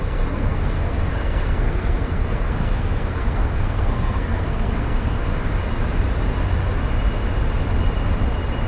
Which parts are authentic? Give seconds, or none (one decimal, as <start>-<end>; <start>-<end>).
5.3-8.7